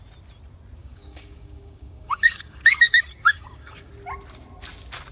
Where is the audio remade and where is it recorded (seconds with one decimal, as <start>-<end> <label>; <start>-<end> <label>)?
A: 0.0-0.8 recorded; 0.8-3.9 remade; 3.9-5.1 recorded